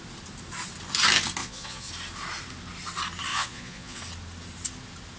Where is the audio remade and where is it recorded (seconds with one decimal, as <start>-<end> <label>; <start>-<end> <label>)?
0.0-1.4 recorded; 1.4-1.9 remade; 1.9-3.3 recorded; 3.3-4.0 remade; 4.0-5.2 recorded